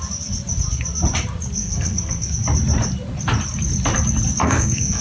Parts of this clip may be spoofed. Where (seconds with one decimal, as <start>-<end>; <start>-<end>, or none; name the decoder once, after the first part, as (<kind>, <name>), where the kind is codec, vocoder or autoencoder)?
1.6-2.3 (codec, SNAC); 4.4-5.0